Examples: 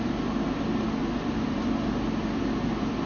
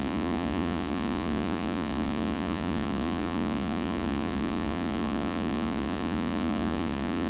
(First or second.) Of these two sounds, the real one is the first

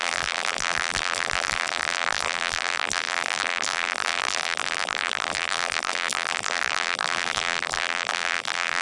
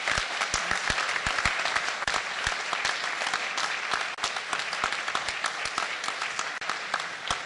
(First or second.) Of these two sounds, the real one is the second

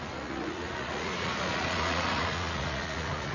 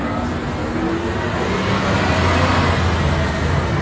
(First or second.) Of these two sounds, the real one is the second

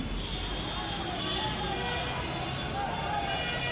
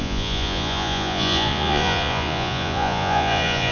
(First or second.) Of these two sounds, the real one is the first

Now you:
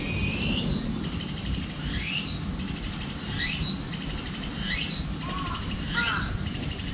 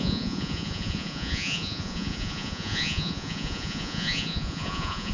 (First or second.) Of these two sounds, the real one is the first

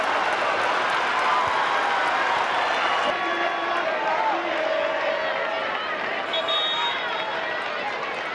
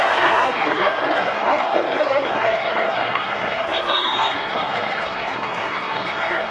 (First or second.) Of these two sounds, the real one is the first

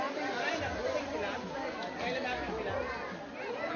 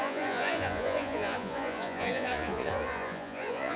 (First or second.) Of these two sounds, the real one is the first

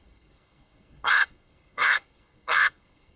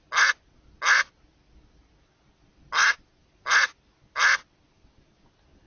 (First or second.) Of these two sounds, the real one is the second